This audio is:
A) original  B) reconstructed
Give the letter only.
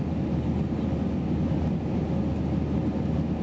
A